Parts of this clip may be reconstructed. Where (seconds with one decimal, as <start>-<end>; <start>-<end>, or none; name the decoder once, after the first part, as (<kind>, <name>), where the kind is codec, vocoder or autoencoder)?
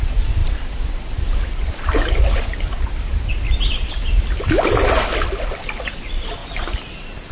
none